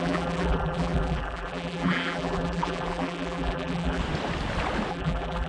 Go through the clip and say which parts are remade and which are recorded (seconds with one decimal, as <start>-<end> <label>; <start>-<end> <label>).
0.0-4.0 remade; 4.0-4.9 recorded; 4.9-5.5 remade